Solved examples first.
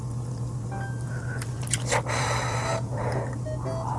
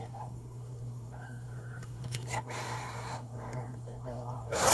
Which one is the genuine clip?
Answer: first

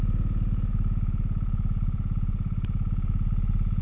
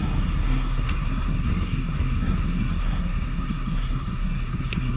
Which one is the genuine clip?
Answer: first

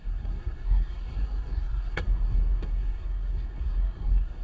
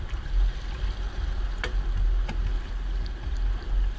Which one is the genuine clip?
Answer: second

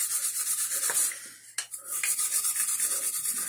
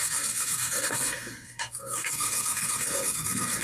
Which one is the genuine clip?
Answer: first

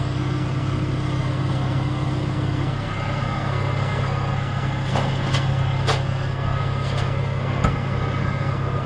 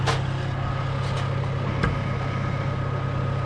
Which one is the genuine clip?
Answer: second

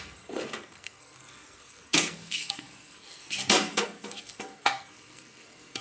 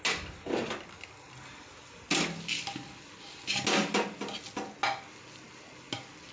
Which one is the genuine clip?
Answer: second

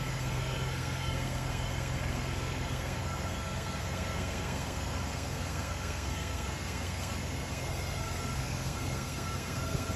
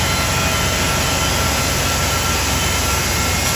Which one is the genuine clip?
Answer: second